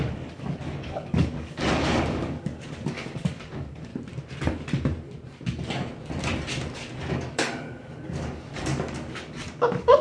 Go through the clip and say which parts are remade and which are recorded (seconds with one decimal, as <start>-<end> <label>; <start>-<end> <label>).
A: 0.0-3.9 remade; 3.9-7.1 recorded; 7.1-10.0 remade